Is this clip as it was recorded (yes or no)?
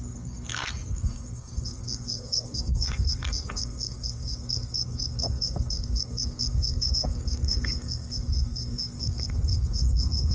no